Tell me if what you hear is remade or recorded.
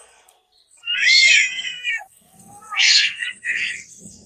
remade